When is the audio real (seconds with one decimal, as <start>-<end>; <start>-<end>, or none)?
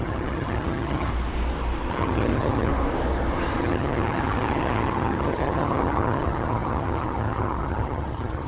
1.1-1.9; 2.7-3.6